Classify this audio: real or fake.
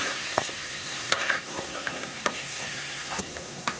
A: fake